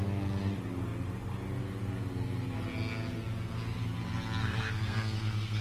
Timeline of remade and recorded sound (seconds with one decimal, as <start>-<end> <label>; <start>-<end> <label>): 0.0-4.4 recorded; 4.4-5.6 remade

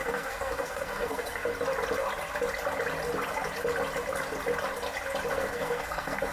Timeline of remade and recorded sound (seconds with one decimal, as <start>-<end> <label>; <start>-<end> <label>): 0.0-1.5 remade; 1.5-5.3 recorded; 5.3-6.3 remade

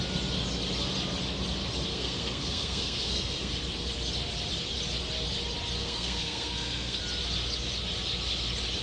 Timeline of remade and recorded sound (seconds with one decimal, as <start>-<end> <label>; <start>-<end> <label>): 0.0-1.9 recorded; 1.9-3.5 remade; 3.5-5.8 recorded; 5.8-7.0 remade; 7.0-8.8 recorded

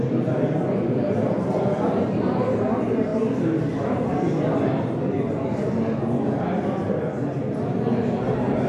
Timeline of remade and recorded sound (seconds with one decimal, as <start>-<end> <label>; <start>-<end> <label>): 0.0-8.7 recorded